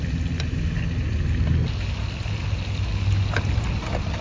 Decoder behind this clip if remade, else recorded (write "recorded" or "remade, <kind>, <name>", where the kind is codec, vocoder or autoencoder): recorded